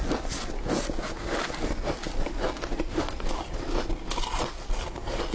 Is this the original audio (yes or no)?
yes